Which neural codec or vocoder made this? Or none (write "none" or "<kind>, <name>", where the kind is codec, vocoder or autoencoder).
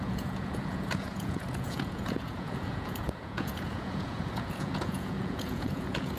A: vocoder, Vocos